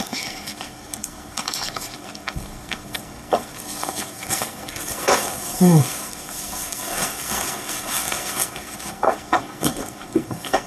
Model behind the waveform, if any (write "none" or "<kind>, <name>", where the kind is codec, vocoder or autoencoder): codec, SNAC